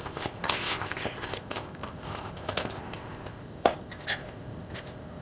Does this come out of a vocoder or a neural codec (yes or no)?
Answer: yes